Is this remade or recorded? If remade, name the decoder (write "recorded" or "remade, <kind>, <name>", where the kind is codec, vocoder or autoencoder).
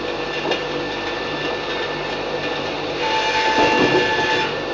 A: recorded